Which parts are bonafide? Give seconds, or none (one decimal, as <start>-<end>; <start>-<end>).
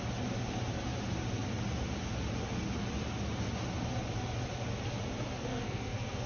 0.0-5.5